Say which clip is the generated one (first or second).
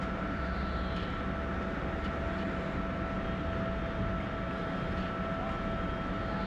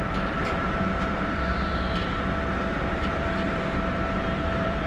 second